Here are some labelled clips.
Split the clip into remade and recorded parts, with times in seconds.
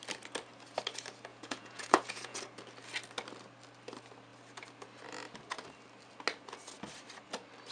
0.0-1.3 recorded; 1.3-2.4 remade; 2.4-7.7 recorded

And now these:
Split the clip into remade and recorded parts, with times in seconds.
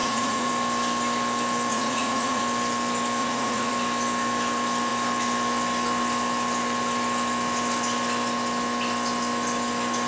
0.0-0.5 remade; 0.5-1.7 recorded; 1.7-2.4 remade; 2.4-3.2 recorded; 3.2-3.7 remade; 3.7-10.1 recorded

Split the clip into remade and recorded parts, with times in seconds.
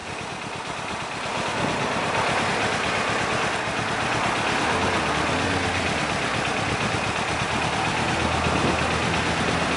0.0-9.8 recorded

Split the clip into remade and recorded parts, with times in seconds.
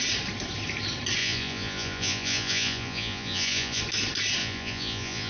0.0-1.2 recorded; 1.2-3.8 remade; 3.8-4.4 recorded; 4.4-5.3 remade